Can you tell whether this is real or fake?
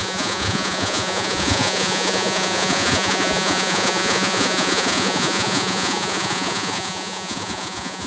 fake